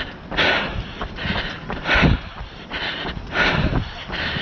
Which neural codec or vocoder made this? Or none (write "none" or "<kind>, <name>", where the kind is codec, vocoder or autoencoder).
none